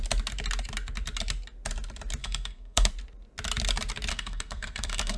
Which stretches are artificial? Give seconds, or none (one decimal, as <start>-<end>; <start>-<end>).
2.2-2.9; 4.1-5.2